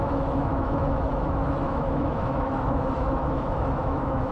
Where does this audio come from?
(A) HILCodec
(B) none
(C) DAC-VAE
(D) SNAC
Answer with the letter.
C